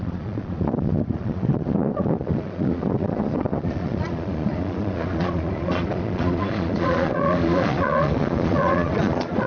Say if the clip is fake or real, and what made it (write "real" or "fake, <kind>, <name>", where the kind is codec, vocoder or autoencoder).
fake, vocoder, Vocos